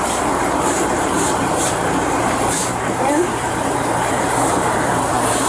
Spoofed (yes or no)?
yes